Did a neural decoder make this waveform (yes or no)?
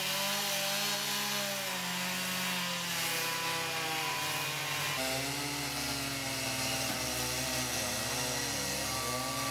no